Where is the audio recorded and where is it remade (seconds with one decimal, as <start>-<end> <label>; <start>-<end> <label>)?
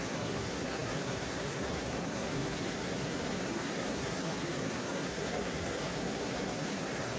0.0-7.2 remade